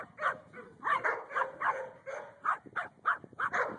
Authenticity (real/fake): real